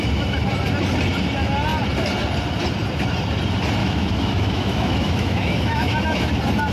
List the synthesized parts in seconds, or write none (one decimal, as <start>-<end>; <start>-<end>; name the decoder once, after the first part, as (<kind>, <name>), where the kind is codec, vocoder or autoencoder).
3.8-6.3 (autoencoder, DAC-VAE)